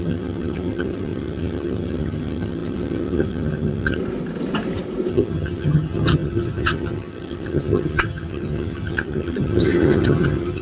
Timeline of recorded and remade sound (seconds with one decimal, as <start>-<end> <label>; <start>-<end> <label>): 0.0-4.0 remade; 4.0-5.1 recorded; 5.1-10.6 remade